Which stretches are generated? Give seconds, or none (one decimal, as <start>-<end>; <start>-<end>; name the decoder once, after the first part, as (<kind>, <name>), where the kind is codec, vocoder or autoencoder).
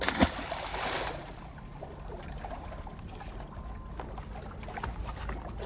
none